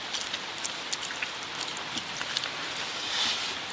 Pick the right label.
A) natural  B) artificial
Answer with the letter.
A